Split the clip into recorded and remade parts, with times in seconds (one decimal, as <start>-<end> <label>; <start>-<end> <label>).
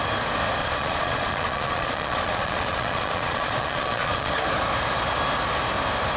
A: 0.0-0.6 recorded; 0.6-4.3 remade; 4.3-6.2 recorded